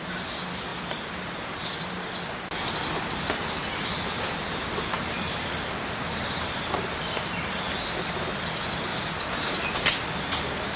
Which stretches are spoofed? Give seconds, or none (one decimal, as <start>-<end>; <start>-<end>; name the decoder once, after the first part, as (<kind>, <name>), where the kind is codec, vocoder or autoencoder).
0.7-1.9 (vocoder, BigVGAN v2); 3.6-6.9; 8.9-9.7